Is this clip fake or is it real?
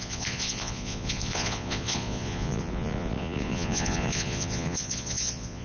fake